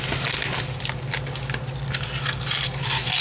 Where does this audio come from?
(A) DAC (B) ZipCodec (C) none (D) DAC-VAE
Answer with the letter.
C